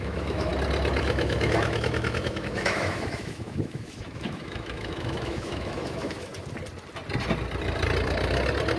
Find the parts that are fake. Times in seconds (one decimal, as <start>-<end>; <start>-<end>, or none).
0.0-0.5; 1.0-6.3